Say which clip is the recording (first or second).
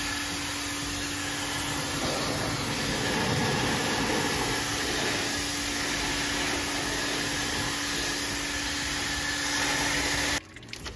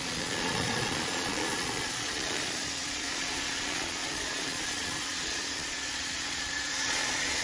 first